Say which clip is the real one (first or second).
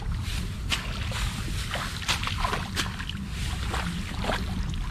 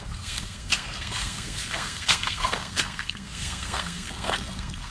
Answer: first